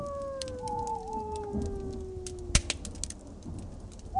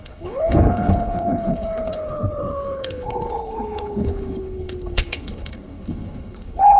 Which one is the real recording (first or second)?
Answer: first